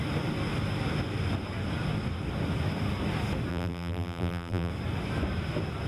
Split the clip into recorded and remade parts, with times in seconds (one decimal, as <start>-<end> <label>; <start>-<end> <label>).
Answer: 0.0-3.5 recorded; 3.5-4.7 remade; 4.7-5.9 recorded